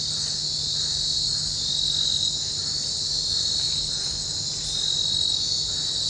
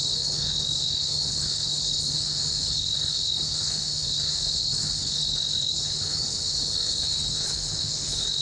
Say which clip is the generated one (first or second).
second